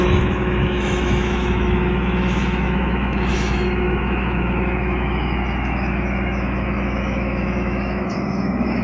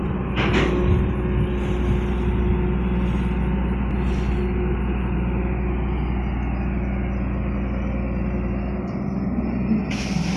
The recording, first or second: second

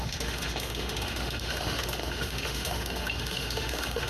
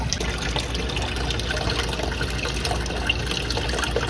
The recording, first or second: second